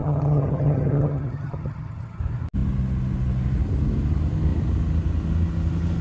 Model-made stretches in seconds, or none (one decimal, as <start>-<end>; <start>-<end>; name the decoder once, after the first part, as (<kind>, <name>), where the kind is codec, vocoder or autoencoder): 0.0-2.2 (vocoder, HiFi-GAN)